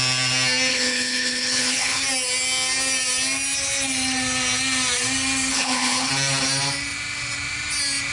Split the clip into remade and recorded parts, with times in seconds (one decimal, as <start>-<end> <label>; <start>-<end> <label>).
0.0-0.7 recorded; 0.7-2.0 remade; 2.0-5.5 recorded; 5.5-6.1 remade; 6.1-8.1 recorded